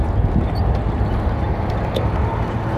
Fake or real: real